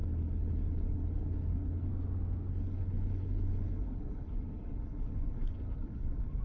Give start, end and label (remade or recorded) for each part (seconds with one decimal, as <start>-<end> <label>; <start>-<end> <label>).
0.0-1.9 remade; 1.9-2.5 recorded; 2.5-6.4 remade

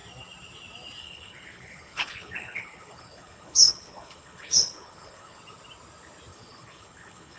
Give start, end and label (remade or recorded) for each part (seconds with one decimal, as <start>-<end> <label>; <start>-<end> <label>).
0.0-1.0 recorded; 1.0-5.4 remade; 5.4-6.3 recorded; 6.3-7.4 remade

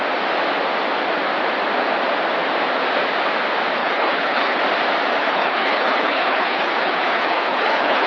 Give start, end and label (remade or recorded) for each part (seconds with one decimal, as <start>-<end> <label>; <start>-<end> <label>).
0.0-3.8 recorded; 3.8-4.6 remade; 4.6-5.2 recorded; 5.2-8.1 remade

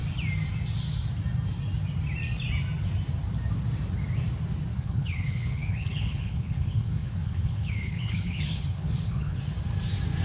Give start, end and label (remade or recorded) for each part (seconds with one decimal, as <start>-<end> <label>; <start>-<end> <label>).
0.0-4.7 recorded; 4.7-9.4 remade; 9.4-10.2 recorded